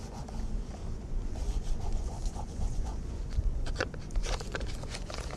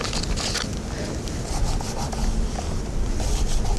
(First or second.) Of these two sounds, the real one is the second